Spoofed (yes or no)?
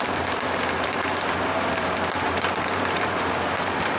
yes